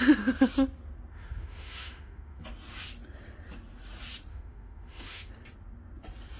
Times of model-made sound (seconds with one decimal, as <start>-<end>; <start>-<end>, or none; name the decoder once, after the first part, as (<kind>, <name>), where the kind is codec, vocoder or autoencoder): 1.1-2.4 (autoencoder, DAC-VAE); 4.3-5.3